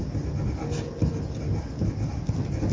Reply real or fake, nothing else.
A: real